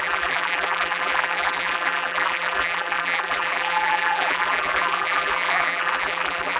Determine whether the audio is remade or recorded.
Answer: remade